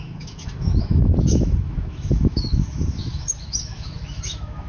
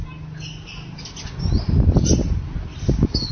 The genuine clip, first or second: second